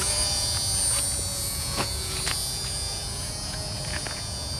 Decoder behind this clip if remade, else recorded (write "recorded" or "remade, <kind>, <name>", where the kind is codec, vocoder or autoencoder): remade, vocoder, Vocos